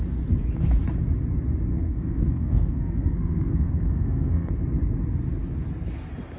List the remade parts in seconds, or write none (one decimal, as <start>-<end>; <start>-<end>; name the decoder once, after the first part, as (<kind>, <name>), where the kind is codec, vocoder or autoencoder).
1.7-4.5 (codec, SNAC)